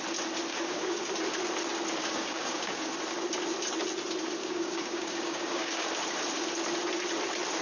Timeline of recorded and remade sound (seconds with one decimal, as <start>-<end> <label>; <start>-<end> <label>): 0.0-0.5 recorded; 0.5-1.1 remade; 1.1-2.0 recorded; 2.0-2.9 remade; 2.9-4.4 recorded; 4.4-5.9 remade; 5.9-7.6 recorded

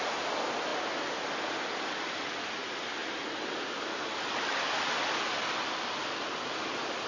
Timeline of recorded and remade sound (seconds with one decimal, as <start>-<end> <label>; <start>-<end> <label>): 0.0-7.1 recorded

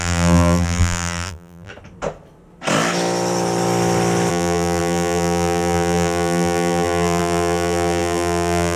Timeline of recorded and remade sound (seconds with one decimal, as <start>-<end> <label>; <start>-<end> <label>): 0.0-1.7 remade; 1.7-4.3 recorded; 4.3-8.8 remade

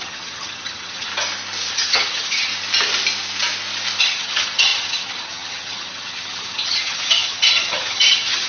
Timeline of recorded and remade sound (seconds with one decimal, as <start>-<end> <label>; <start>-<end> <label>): 0.0-1.1 remade; 1.1-1.7 recorded; 1.7-2.5 remade; 2.5-4.0 recorded; 4.0-8.5 remade

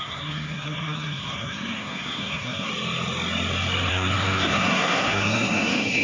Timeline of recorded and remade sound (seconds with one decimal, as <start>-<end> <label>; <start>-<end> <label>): 0.0-2.7 remade; 2.7-3.9 recorded; 3.9-6.0 remade